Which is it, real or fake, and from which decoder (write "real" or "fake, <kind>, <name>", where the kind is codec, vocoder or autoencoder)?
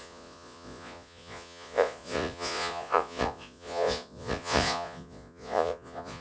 fake, vocoder, Vocos